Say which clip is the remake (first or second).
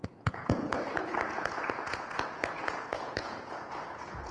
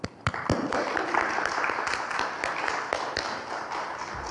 first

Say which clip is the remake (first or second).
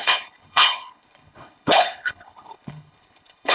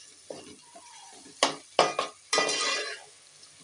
first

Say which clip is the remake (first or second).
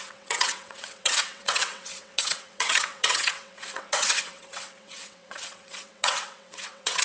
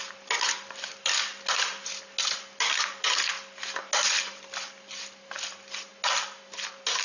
first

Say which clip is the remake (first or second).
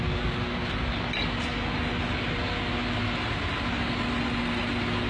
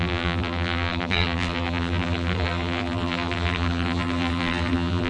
second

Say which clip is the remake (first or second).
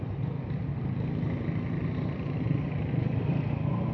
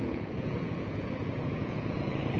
second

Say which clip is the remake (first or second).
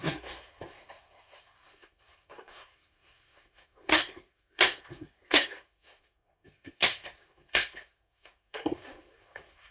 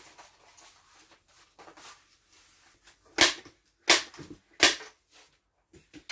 first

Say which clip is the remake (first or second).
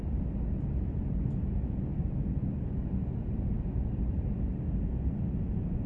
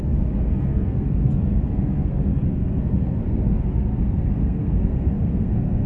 second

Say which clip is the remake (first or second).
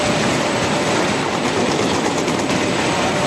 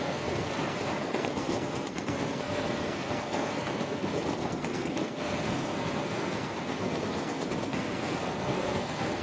second